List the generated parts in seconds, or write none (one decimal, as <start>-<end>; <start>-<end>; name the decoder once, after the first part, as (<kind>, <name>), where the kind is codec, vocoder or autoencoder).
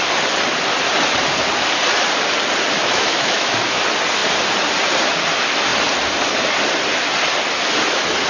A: 2.8-3.8 (autoencoder, DAC-VAE)